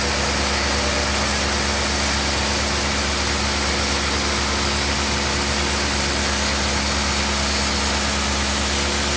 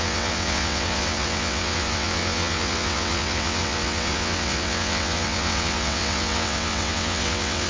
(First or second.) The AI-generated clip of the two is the second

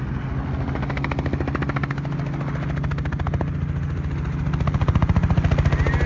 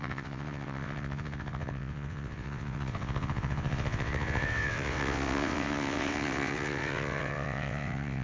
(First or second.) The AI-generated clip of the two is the second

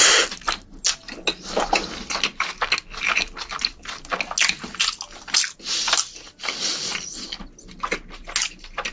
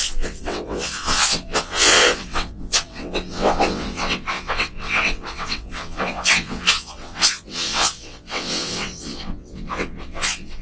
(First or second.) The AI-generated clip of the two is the second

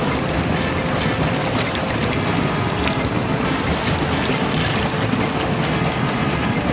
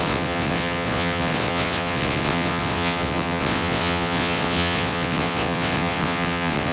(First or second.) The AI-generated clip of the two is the second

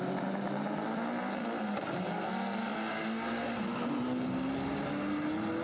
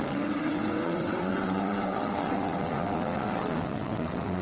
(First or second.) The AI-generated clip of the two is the second